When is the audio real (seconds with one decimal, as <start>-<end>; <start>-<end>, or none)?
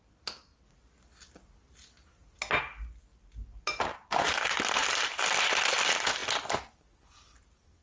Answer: 0.0-7.8